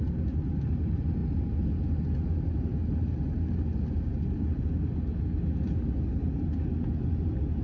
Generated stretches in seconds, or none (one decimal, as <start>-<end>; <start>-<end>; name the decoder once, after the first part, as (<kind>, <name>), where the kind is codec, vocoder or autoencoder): none

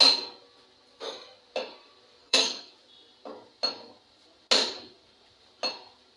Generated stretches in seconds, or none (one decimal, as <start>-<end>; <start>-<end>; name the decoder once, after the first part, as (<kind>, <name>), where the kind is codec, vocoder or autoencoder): 2.2-2.7 (codec, SNAC)

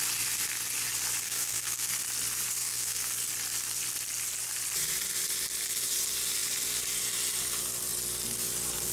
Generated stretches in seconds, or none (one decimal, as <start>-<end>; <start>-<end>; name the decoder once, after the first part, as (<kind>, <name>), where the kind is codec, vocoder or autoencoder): 1.2-1.9 (codec, SNAC); 2.6-3.1

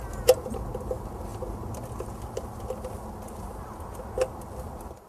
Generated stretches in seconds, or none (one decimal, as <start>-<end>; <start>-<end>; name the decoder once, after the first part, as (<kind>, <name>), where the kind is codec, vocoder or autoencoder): none

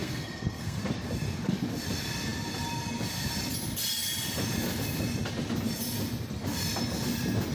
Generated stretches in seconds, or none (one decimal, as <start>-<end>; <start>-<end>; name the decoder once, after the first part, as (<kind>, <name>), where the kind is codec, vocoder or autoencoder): 0.0-0.8 (codec, SNAC)

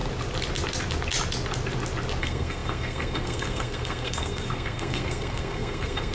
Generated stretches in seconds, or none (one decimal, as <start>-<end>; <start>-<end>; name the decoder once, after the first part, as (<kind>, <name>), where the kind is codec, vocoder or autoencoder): 2.2-6.1 (codec, SNAC)

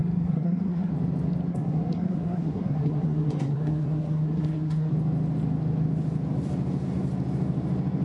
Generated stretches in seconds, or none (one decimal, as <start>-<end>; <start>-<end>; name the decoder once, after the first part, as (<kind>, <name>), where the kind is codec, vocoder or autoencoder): 0.0-0.9 (codec, SNAC); 1.5-4.9